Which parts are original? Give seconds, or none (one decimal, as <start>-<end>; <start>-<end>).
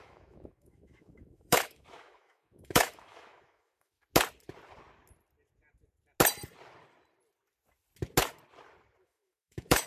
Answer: 4.0-9.0